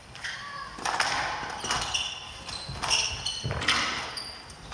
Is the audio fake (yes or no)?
no